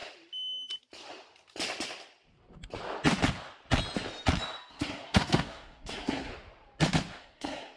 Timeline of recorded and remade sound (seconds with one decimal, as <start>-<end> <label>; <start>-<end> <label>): 0.0-4.7 recorded; 4.7-6.3 remade; 6.3-7.2 recorded; 7.2-7.8 remade